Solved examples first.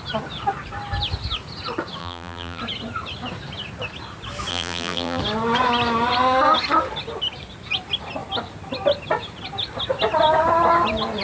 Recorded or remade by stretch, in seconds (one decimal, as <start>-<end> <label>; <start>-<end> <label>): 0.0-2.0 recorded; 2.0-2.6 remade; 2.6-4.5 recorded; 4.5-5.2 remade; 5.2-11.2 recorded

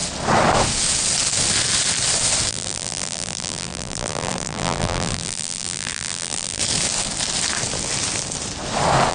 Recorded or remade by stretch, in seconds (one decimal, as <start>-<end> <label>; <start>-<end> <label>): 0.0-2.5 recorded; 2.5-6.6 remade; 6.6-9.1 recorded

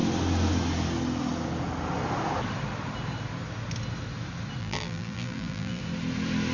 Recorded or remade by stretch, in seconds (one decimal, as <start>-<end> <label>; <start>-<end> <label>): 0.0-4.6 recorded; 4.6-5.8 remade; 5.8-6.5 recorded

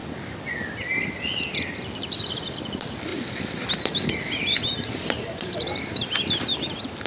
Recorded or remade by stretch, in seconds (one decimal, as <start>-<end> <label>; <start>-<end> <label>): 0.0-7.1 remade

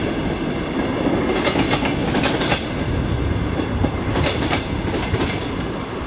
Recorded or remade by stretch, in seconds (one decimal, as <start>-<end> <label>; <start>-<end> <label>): 0.0-2.0 recorded; 2.0-6.1 remade

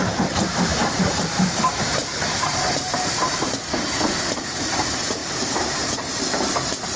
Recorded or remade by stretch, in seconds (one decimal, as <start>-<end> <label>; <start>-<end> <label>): 0.0-3.6 remade; 3.6-4.3 recorded; 4.3-7.0 remade

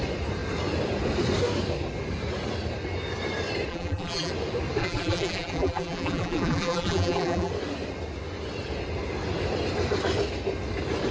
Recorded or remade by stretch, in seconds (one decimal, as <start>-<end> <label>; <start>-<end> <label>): 0.0-3.7 recorded; 3.7-4.3 remade; 4.3-4.8 recorded; 4.8-7.5 remade; 7.5-11.1 recorded

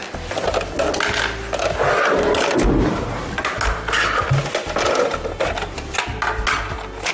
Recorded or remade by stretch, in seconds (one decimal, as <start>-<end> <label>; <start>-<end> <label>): 0.0-7.1 recorded